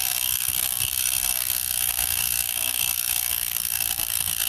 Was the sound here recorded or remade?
remade